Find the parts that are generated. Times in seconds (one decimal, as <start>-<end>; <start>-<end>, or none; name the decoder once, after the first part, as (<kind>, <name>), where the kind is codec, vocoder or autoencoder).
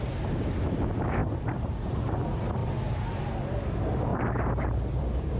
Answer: 1.2-1.7 (vocoder, BigVGAN v2); 4.1-5.4